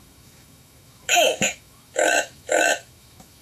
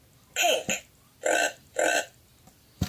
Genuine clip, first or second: second